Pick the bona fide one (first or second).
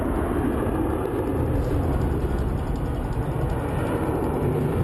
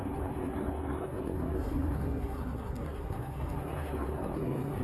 first